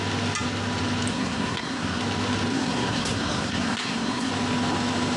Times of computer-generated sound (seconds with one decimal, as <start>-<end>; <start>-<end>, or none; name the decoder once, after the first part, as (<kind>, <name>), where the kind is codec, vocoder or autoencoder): 1.1-2.0 (codec, SNAC); 2.5-4.3